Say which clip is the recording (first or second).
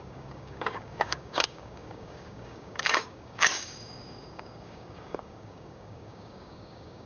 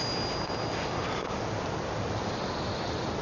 second